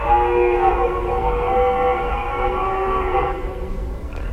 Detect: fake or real fake